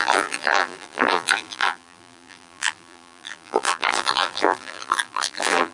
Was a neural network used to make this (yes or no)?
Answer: yes